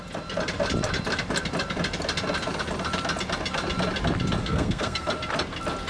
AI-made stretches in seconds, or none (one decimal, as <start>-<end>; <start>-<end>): 4.4-5.1